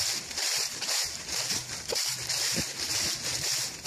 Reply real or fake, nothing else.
fake